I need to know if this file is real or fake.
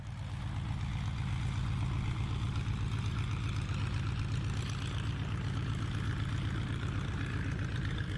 real